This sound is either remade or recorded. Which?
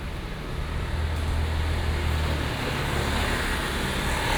recorded